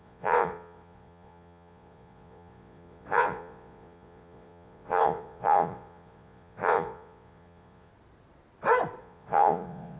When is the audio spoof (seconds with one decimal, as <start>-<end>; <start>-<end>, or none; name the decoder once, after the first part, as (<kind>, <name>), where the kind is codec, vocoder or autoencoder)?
0.0-7.9 (vocoder, Vocos); 9.0-10.0